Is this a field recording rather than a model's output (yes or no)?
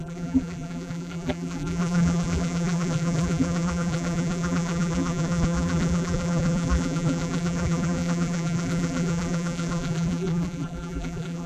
no